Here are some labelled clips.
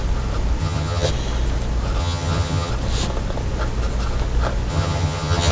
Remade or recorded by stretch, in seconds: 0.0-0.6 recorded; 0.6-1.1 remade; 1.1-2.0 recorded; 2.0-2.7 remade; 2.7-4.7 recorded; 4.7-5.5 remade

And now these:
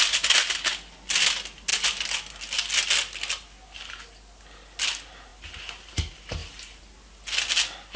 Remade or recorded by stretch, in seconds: 0.0-8.0 recorded

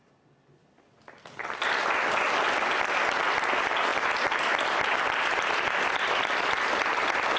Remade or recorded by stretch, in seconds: 0.0-7.4 recorded

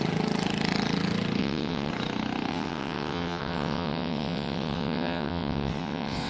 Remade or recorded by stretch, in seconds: 0.0-1.4 recorded; 1.4-1.9 remade; 1.9-2.5 recorded; 2.5-6.3 remade

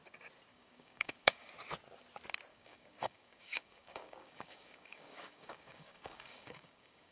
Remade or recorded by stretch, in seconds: 0.0-0.5 recorded; 0.5-1.5 remade; 1.5-2.5 recorded; 2.5-7.1 remade